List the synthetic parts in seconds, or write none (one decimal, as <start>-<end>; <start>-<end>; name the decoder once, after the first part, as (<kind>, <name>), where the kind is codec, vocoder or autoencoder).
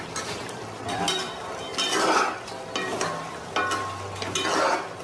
none